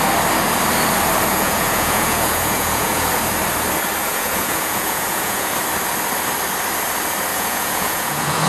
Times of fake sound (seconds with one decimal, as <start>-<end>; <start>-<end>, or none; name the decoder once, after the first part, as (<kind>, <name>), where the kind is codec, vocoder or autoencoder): 1.3-3.1 (vocoder, Vocos); 4.0-5.5; 7.3-8.5